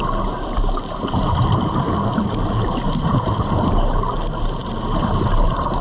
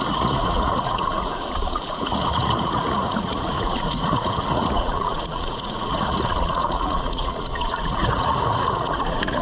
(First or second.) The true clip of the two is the first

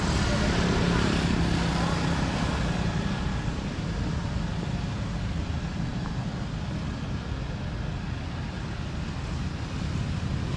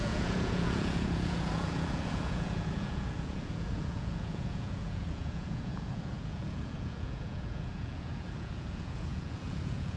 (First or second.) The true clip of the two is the first